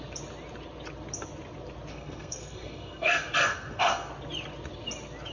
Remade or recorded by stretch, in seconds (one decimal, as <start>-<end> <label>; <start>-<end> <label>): 0.0-1.9 recorded; 1.9-4.1 remade; 4.1-5.3 recorded